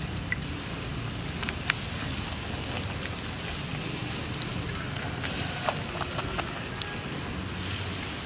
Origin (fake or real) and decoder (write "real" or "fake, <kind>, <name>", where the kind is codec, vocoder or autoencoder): real